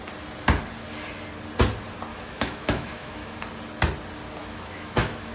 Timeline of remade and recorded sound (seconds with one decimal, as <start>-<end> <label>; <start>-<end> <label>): 0.0-2.1 recorded; 2.1-3.4 remade; 3.4-4.4 recorded; 4.4-5.3 remade